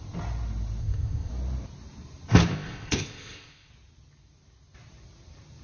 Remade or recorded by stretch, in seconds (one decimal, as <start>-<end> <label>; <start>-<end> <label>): 0.0-0.8 recorded; 0.8-1.3 remade; 1.3-2.5 recorded; 2.5-3.7 remade; 3.7-5.6 recorded